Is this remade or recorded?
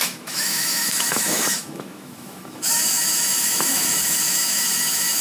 remade